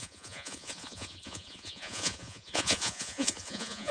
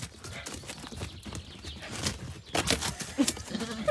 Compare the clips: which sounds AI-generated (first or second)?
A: first